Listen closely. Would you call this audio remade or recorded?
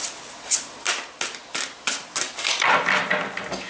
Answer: recorded